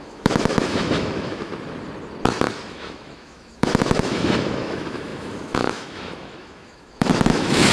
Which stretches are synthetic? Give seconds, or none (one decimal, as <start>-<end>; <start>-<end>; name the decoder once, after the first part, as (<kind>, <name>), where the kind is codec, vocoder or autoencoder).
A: 0.0-1.5 (autoencoder, DAC-VAE); 2.7-7.7